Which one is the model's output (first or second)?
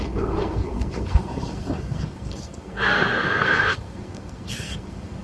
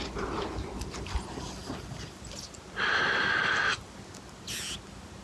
first